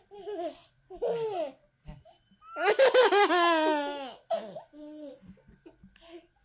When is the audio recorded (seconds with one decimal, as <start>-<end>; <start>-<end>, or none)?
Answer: 0.0-6.4